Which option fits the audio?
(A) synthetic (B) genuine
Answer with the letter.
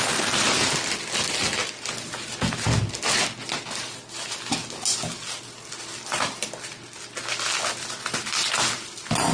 B